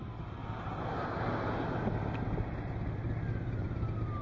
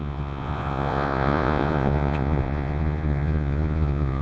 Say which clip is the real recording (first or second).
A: first